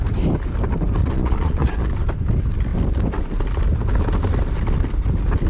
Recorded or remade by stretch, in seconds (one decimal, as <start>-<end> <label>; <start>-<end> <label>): 0.0-1.0 recorded; 1.0-1.9 remade; 1.9-5.5 recorded